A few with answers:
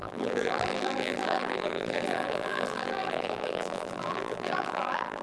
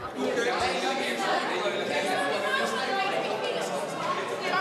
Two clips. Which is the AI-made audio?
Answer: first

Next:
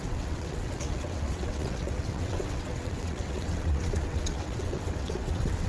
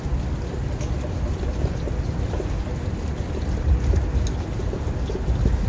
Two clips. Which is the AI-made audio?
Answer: first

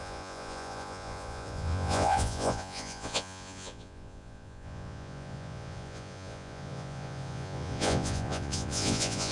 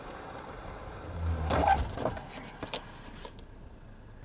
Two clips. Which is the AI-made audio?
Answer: first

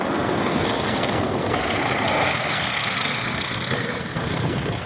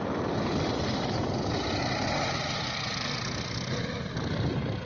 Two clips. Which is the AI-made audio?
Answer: first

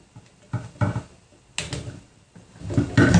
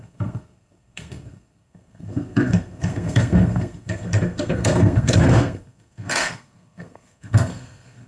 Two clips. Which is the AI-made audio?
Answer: second